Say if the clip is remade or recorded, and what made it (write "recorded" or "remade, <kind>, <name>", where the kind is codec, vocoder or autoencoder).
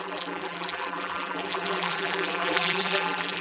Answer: remade, vocoder, BigVGAN v2